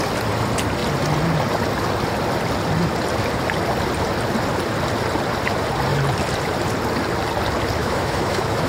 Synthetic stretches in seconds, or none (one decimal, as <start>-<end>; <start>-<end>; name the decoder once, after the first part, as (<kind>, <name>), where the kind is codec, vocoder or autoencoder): 7.8-8.7 (autoencoder, DAC-VAE)